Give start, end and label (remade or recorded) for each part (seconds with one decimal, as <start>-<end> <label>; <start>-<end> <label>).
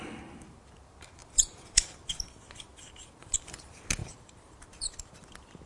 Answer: 0.0-1.2 recorded; 1.2-2.2 remade; 2.2-2.7 recorded; 2.7-3.6 remade; 3.6-4.0 recorded; 4.0-4.6 remade; 4.6-5.7 recorded